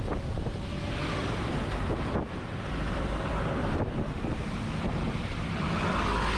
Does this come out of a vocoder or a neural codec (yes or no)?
no